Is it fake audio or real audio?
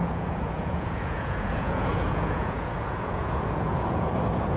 fake